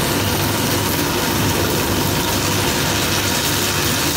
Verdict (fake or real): real